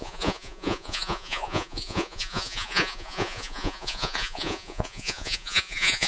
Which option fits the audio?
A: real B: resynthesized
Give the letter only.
B